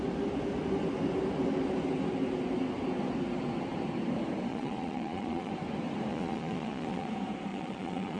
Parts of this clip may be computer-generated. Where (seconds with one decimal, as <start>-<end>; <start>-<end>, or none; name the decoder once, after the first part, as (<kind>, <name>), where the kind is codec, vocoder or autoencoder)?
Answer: 4.5-5.5 (vocoder, Vocos); 6.1-7.1; 7.5-8.2